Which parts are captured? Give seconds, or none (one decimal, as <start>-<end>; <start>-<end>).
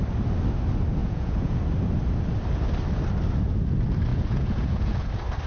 0.0-1.0; 1.6-4.1; 5.1-5.5